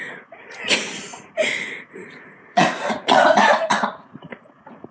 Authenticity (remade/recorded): remade